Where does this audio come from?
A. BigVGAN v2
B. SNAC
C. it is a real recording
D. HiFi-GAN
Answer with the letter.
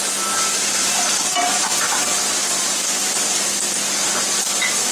C